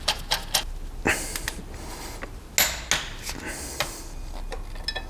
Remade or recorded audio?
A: recorded